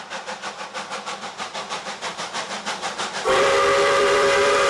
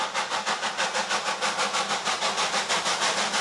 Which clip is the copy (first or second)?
first